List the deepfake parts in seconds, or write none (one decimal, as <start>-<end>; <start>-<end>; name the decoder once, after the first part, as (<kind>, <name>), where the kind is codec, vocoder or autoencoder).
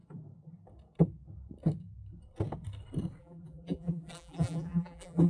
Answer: 3.2-5.3 (vocoder, BigVGAN v2)